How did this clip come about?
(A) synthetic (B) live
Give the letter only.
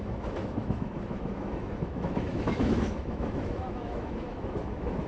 A